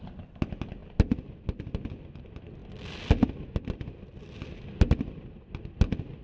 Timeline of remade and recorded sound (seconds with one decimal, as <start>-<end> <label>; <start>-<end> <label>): 0.0-6.2 recorded